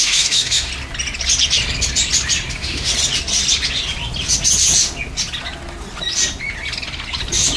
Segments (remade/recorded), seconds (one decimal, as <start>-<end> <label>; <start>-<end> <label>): 0.0-0.7 remade; 0.7-2.5 recorded; 2.5-2.9 remade; 2.9-7.6 recorded